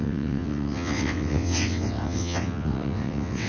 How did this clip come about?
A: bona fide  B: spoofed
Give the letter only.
B